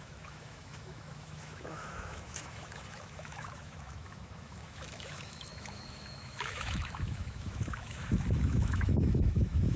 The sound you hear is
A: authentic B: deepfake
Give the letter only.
B